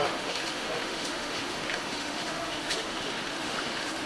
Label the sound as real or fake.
fake